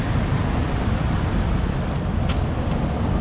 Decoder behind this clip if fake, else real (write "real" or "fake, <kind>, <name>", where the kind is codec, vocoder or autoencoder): real